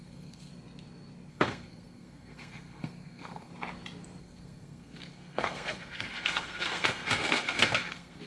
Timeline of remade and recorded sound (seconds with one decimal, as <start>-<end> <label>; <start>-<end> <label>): 0.0-0.5 remade; 0.5-1.3 recorded; 1.3-3.5 remade; 3.5-4.2 recorded; 4.2-8.3 remade